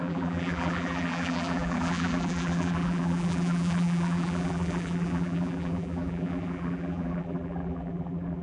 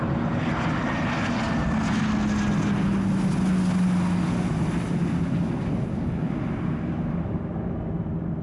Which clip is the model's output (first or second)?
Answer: first